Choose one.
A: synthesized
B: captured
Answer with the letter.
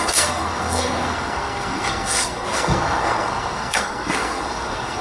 A